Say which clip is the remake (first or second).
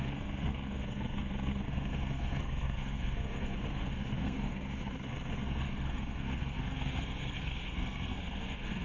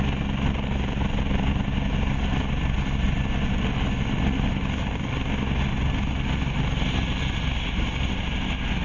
first